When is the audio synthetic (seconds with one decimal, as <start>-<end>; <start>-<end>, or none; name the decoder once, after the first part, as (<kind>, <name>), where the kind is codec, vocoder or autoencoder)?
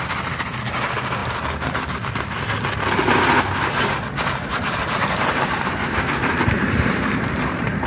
4.5-7.9 (vocoder, BigVGAN v2)